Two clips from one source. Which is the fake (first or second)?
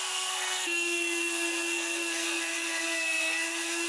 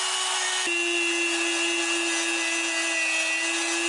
first